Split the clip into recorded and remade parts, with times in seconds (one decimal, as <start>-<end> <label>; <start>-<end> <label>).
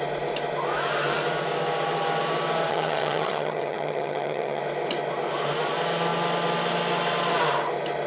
0.0-2.7 recorded; 2.7-4.6 remade; 4.6-8.1 recorded